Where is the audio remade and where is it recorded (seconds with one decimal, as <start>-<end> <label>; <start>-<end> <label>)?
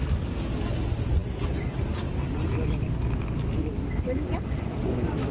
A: 0.0-5.3 recorded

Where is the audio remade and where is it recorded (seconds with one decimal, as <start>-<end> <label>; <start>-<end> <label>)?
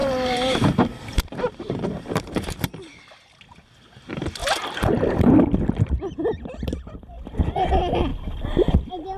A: 0.0-2.9 remade; 2.9-4.4 recorded; 4.4-5.3 remade; 5.3-9.2 recorded